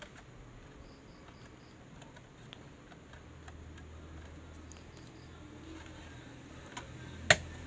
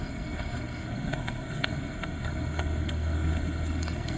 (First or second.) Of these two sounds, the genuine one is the first